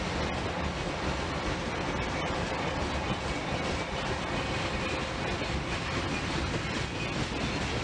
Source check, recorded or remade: recorded